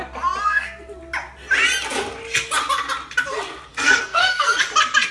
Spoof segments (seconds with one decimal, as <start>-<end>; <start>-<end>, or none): 0.4-1.0; 3.7-4.6